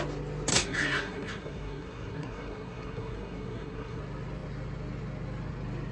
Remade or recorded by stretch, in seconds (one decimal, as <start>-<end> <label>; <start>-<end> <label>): 0.0-0.5 recorded; 0.5-4.0 remade; 4.0-5.9 recorded